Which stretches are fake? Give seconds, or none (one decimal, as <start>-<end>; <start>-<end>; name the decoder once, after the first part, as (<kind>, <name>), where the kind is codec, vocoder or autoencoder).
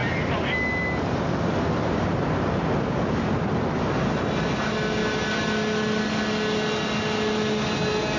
none